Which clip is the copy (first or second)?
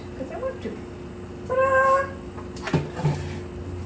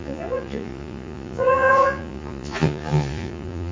second